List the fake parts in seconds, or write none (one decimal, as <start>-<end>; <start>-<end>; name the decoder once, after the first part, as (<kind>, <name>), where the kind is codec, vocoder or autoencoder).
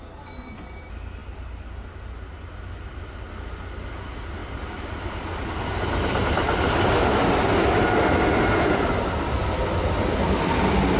none